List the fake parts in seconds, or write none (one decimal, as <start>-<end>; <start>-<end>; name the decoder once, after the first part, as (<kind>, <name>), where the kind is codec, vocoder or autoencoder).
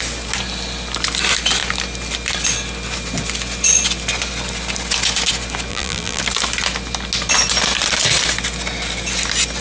5.7-6.2 (vocoder, BigVGAN v2)